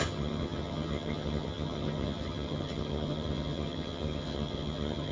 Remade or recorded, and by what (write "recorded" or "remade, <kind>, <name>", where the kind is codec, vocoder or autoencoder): remade, vocoder, HiFi-GAN